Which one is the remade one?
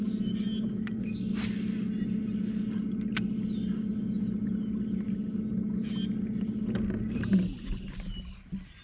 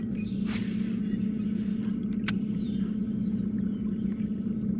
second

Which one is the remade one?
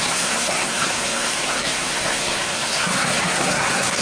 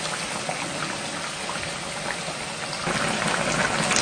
first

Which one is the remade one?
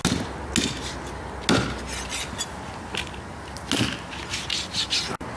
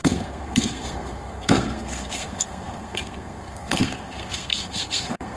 second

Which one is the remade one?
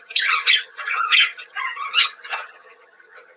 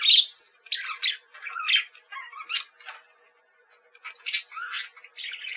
first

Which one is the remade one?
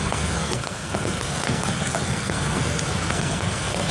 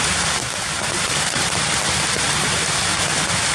first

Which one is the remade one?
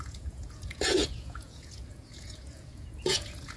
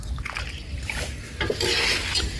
first